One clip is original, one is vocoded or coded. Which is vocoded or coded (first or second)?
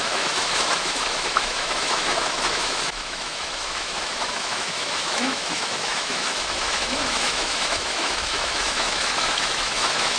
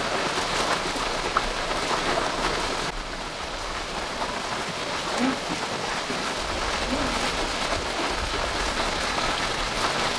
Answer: first